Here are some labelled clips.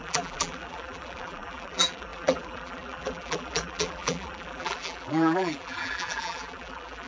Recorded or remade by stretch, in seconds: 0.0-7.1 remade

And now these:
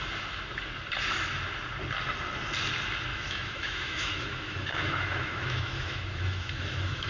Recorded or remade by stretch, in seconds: 0.0-3.1 recorded; 3.1-7.1 remade

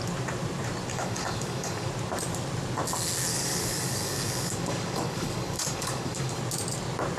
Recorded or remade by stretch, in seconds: 0.0-0.9 recorded; 0.9-1.9 remade; 1.9-3.3 recorded; 3.3-6.4 remade; 6.4-7.2 recorded

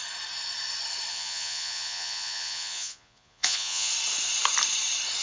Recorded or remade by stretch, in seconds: 0.0-1.1 recorded; 1.1-3.9 remade; 3.9-5.2 recorded

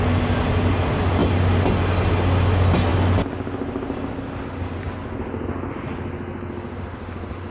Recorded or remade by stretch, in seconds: 0.0-7.5 recorded

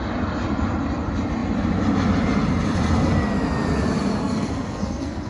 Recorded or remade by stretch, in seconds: 0.0-4.2 recorded; 4.2-5.3 remade

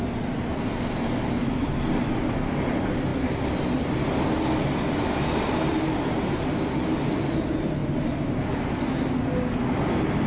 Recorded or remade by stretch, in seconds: 0.0-10.3 recorded

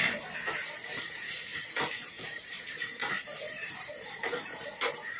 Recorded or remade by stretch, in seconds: 0.0-5.2 remade